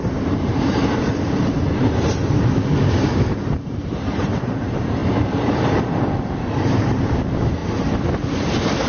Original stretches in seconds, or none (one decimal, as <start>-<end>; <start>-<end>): 2.1-2.8; 7.6-8.3